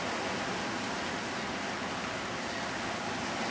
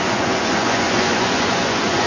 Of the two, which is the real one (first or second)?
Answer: first